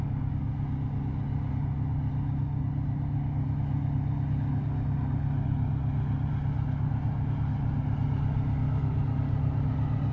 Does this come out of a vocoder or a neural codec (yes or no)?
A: no